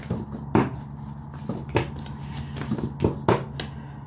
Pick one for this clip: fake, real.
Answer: real